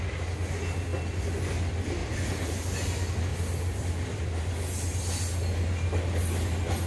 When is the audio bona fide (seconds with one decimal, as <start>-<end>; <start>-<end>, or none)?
0.0-2.0; 2.7-3.3; 4.4-6.9